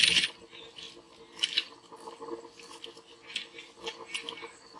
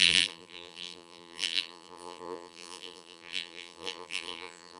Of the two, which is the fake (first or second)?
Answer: second